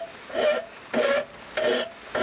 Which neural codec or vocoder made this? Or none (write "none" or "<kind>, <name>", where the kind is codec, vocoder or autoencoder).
none